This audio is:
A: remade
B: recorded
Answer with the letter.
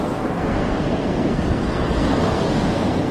A